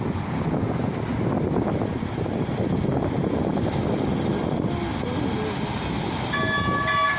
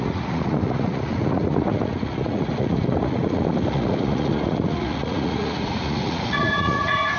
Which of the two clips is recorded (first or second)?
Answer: first